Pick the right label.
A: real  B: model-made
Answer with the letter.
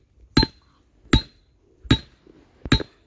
A